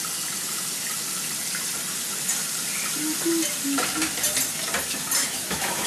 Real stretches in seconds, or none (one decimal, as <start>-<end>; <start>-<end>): 0.0-5.2